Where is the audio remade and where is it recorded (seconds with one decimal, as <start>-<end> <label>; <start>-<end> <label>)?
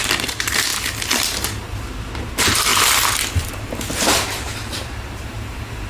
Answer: 0.0-0.7 remade; 0.7-2.0 recorded; 2.0-2.7 remade; 2.7-3.3 recorded; 3.3-5.9 remade